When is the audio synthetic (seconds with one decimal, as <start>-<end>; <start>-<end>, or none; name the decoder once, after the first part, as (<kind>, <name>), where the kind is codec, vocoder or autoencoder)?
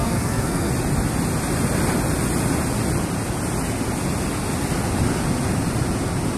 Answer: 0.0-0.7 (codec, SNAC)